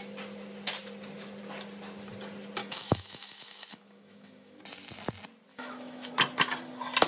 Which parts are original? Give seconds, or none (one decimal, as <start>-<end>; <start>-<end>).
0.0-2.6; 4.6-5.5; 6.1-7.1